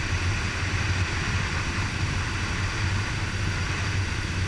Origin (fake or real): real